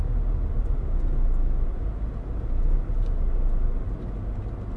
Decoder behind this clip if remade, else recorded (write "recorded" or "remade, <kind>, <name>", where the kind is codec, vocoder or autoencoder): recorded